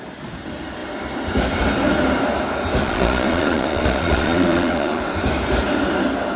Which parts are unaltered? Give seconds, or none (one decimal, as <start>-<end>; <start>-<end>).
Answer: 0.0-2.8; 5.0-6.4